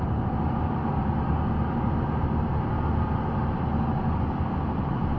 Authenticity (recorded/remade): recorded